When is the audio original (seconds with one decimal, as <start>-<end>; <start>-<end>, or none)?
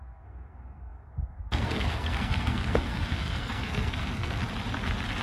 4.4-5.2